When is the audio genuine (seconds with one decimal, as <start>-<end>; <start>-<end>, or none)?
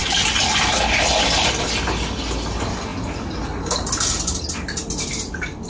0.0-5.7